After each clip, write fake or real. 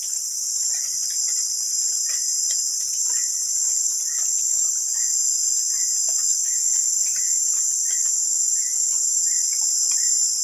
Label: real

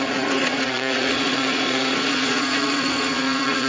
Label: fake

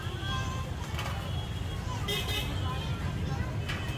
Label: real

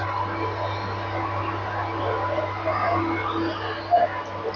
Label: real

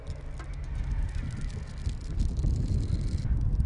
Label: real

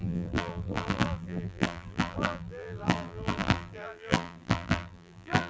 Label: fake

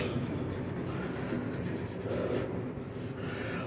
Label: real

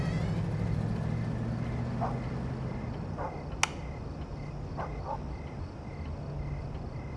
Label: real